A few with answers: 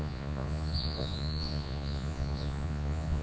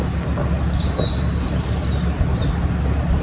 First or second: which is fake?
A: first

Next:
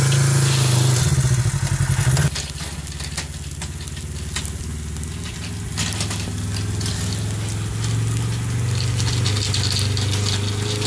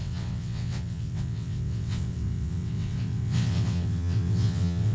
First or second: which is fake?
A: second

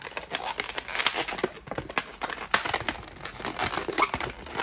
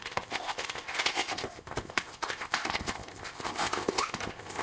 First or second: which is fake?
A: second